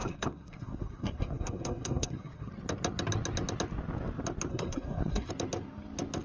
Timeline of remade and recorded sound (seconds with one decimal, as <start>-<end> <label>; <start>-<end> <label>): 0.0-2.5 remade; 2.5-4.5 recorded; 4.5-5.3 remade; 5.3-6.2 recorded